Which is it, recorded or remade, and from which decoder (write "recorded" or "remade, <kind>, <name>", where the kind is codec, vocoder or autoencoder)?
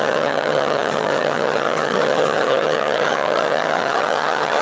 remade, vocoder, HiFi-GAN